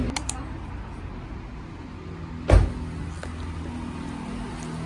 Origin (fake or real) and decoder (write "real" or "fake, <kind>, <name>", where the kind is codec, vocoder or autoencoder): real